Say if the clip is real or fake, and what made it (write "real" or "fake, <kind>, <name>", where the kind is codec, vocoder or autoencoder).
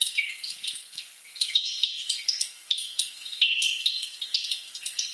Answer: fake, codec, SNAC